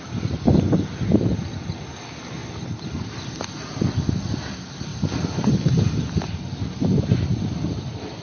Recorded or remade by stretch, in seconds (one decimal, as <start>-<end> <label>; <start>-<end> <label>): 0.0-2.4 remade; 2.4-3.7 recorded; 3.7-4.9 remade; 4.9-7.0 recorded; 7.0-8.2 remade